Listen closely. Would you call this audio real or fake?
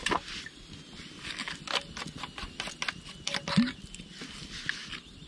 real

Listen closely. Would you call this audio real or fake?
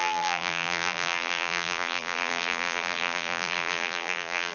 fake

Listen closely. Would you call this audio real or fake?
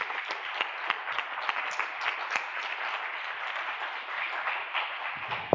real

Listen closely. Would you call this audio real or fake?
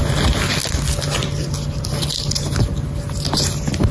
real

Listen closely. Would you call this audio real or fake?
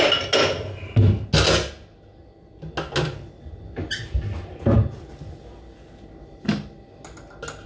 real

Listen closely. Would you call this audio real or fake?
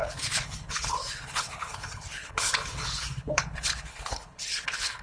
fake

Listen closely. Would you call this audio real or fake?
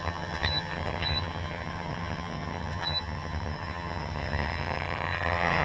fake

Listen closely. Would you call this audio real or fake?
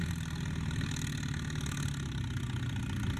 real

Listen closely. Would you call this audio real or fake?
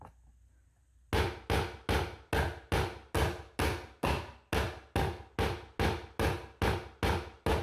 real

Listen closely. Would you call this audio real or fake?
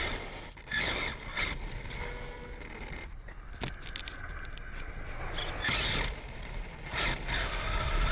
real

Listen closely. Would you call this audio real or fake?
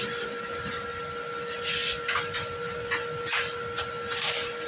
real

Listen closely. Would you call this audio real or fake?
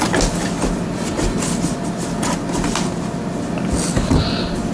real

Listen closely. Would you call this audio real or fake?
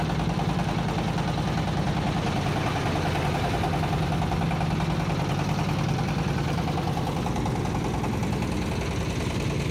real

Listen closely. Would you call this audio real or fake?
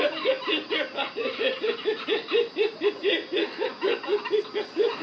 real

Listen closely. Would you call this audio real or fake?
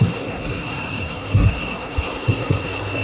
fake